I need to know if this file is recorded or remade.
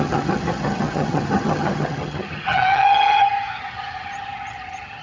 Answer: remade